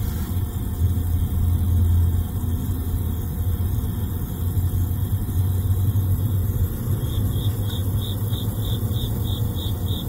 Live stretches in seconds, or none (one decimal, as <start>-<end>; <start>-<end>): 0.0-10.1